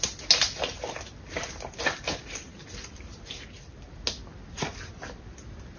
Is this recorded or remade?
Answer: recorded